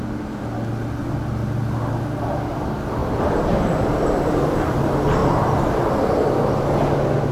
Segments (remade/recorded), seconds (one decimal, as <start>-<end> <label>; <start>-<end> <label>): 0.0-3.0 recorded; 3.0-4.8 remade; 4.8-7.3 recorded